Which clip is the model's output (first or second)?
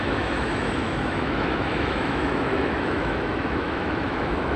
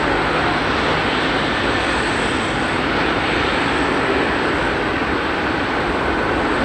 first